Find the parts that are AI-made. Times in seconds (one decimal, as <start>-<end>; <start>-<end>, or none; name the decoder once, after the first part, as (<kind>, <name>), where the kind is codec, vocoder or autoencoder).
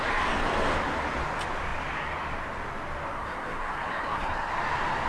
3.1-4.5 (codec, SNAC)